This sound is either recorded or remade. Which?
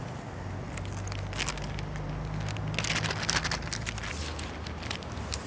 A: recorded